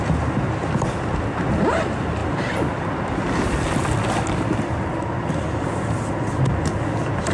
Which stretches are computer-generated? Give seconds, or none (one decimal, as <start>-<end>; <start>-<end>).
none